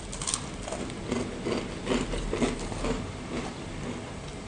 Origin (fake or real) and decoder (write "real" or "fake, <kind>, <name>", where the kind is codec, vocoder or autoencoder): real